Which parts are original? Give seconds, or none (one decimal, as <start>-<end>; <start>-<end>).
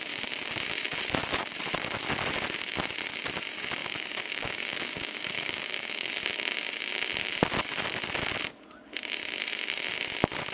0.0-3.8; 6.1-10.5